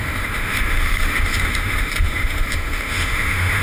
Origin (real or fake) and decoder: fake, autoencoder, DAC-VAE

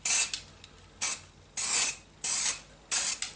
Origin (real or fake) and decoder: real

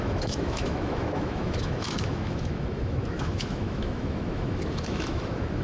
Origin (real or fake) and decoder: fake, autoencoder, DAC-VAE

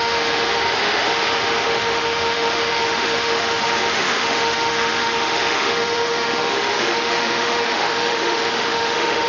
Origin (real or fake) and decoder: fake, autoencoder, DAC-VAE